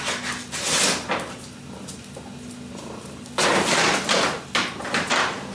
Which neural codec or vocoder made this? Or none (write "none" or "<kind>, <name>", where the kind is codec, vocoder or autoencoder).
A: none